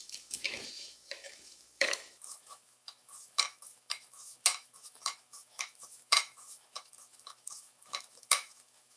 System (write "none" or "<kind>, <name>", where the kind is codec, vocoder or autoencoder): autoencoder, DAC-VAE